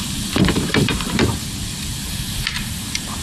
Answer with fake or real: fake